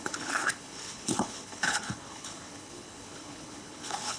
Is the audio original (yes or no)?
no